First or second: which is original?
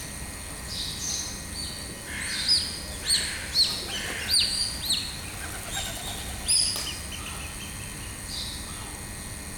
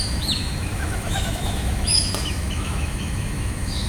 first